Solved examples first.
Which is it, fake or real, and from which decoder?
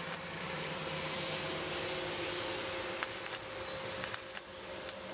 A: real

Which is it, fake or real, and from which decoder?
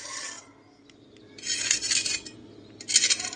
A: real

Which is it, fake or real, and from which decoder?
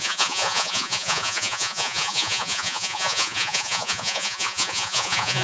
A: fake, vocoder, Vocos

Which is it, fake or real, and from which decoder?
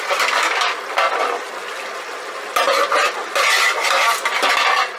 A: real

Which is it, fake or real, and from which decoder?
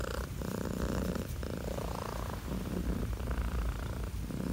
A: fake, vocoder, BigVGAN v2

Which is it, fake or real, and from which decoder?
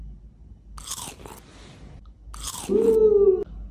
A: real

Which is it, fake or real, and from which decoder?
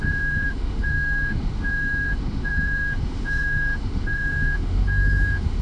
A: fake, autoencoder, DAC-VAE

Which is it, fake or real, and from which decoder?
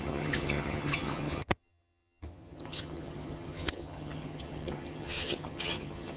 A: fake, vocoder, HiFi-GAN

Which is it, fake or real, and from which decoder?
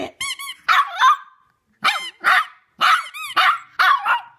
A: real